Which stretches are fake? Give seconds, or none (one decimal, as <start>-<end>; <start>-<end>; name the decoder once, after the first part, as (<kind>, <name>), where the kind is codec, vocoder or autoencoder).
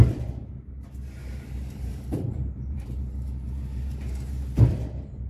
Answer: 1.2-4.3 (vocoder, BigVGAN v2)